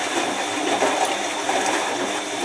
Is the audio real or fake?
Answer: real